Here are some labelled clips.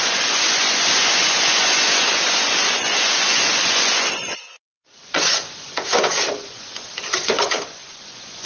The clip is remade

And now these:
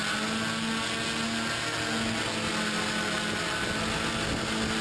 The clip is recorded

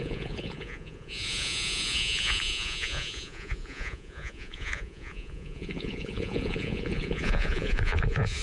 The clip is remade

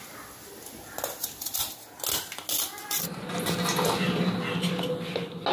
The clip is recorded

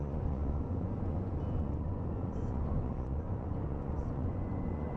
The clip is remade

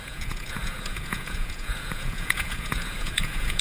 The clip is remade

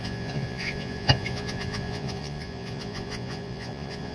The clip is remade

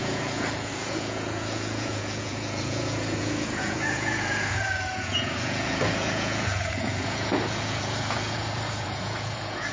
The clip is remade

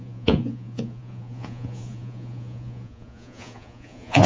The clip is remade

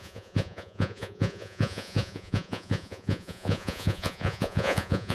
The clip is remade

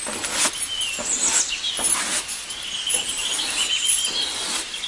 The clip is recorded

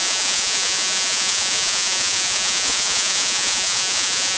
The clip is remade